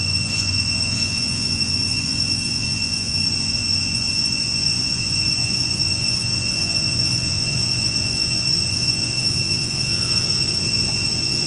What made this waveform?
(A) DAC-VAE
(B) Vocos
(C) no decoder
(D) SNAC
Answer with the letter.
B